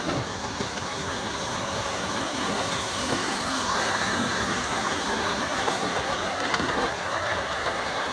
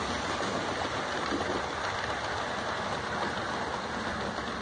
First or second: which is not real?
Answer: first